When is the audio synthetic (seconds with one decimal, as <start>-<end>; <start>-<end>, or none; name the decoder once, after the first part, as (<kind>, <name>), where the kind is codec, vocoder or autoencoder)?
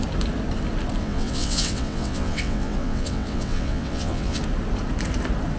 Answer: 1.0-4.4 (vocoder, WaveNeXt)